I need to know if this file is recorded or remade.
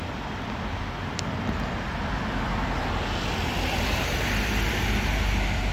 recorded